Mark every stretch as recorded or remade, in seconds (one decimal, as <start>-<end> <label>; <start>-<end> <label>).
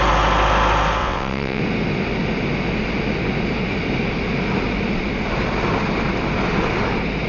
0.0-1.0 recorded; 1.0-1.6 remade; 1.6-7.3 recorded